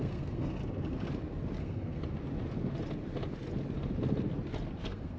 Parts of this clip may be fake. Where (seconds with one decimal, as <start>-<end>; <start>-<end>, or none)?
0.0-0.6; 1.6-2.0; 4.8-5.2